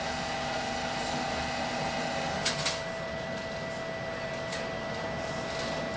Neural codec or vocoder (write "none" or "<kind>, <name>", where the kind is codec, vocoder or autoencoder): none